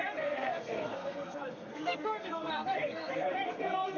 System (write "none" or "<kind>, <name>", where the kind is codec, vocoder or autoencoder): codec, SNAC